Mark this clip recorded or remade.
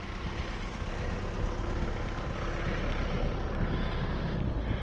recorded